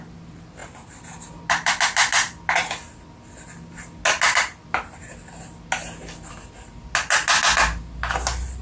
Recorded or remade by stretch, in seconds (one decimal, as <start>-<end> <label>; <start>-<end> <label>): 0.0-8.6 recorded